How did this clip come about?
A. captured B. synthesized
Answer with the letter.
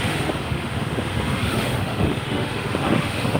B